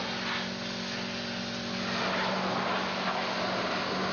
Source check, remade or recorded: recorded